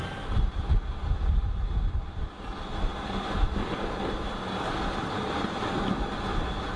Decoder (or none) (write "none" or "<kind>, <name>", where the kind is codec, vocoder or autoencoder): none